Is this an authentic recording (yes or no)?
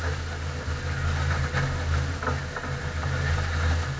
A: yes